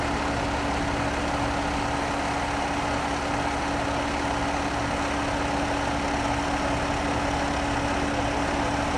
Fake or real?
real